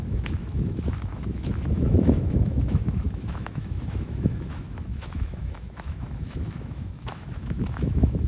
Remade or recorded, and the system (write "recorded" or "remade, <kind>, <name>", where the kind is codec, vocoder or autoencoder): remade, autoencoder, DAC-VAE